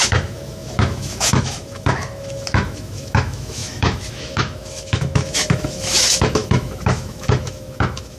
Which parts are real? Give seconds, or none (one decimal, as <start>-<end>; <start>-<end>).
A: none